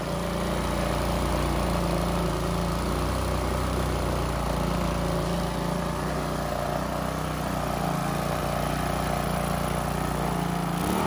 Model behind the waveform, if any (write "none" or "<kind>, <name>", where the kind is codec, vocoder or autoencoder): none